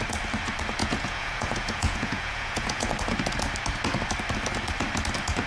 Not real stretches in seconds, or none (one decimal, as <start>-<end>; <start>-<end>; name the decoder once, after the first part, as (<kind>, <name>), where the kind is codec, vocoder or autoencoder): 0.8-2.9 (vocoder, Vocos)